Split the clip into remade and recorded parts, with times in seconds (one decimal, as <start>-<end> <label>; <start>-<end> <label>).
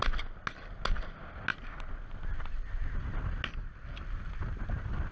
0.0-5.1 recorded